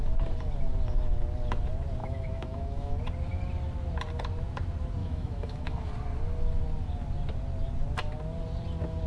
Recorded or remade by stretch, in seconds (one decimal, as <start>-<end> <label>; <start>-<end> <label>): 0.0-2.0 recorded; 2.0-3.0 remade; 3.0-5.0 recorded; 5.0-5.9 remade; 5.9-9.1 recorded